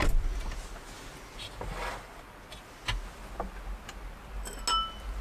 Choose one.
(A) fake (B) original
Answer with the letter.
B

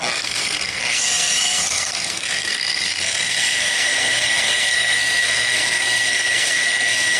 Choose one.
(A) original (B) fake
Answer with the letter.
B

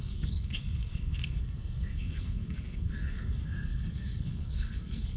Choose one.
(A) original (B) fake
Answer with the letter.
B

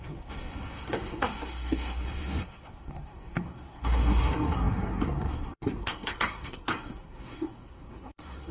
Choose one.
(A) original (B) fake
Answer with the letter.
B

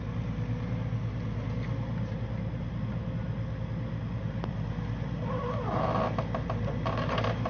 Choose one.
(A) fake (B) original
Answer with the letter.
B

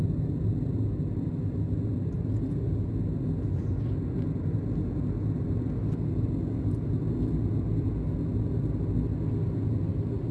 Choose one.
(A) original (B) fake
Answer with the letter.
A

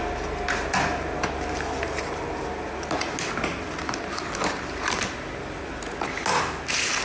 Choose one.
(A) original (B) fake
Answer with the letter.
A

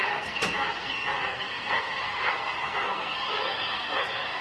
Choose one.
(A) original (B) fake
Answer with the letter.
B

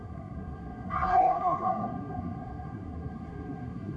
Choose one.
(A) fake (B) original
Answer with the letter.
A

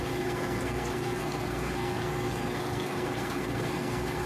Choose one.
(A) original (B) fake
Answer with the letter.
B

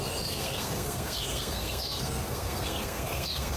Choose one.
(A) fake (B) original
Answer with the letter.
A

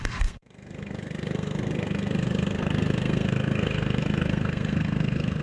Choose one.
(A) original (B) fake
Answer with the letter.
B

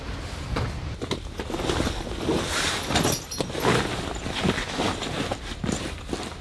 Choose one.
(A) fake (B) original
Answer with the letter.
B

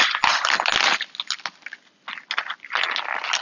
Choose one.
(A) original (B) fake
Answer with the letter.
A